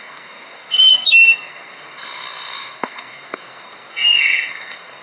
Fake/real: fake